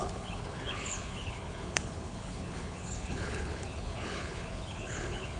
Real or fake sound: fake